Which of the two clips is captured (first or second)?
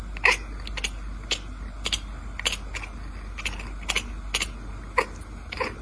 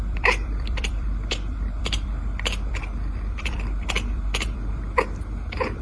first